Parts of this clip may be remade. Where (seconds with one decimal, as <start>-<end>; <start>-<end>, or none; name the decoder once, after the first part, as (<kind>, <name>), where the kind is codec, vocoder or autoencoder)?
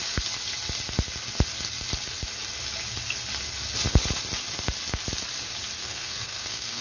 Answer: 5.8-6.8 (codec, SNAC)